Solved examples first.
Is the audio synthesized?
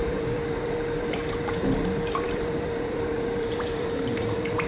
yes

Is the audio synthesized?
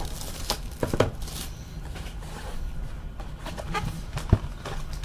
yes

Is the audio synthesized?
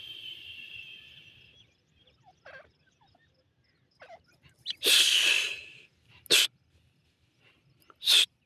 no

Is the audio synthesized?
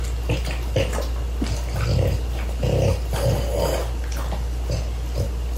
no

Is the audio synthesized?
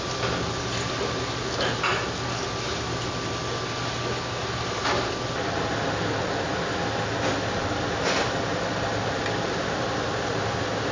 no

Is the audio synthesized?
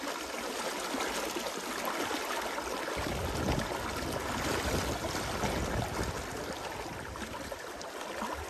no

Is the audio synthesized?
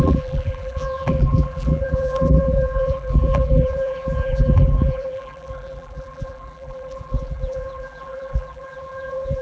yes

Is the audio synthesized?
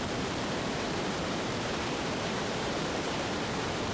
yes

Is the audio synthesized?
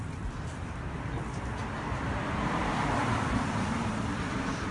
yes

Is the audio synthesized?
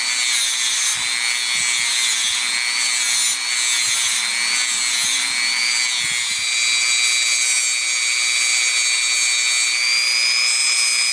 no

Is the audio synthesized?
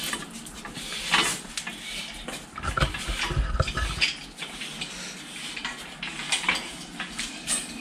no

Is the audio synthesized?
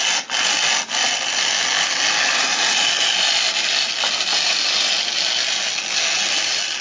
no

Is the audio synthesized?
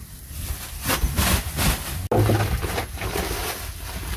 no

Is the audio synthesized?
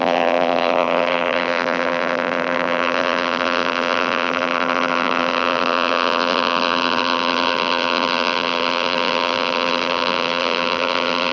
yes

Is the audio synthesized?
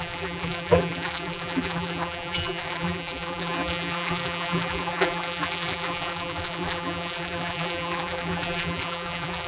yes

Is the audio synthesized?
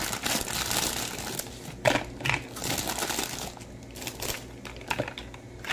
no